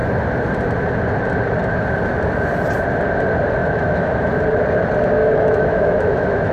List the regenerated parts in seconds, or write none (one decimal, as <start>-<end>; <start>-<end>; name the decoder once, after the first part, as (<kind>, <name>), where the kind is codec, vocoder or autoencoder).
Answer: 3.6-4.4 (autoencoder, DAC-VAE); 5.2-6.5